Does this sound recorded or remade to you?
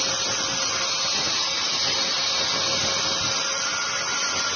recorded